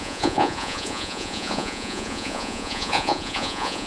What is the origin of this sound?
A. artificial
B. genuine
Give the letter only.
A